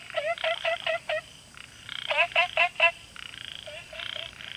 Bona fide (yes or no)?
no